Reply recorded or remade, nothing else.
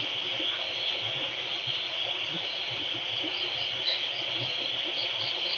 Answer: recorded